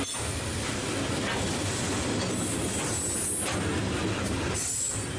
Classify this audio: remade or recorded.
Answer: recorded